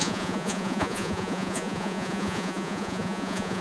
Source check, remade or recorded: remade